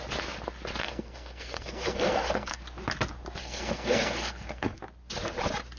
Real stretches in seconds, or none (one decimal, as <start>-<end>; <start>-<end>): 0.0-0.8; 2.6-3.4; 4.8-5.8